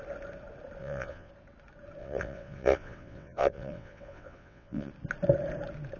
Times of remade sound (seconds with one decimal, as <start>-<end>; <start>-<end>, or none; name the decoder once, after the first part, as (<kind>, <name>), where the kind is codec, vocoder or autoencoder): 0.8-1.3 (vocoder, WaveNeXt); 2.0-4.9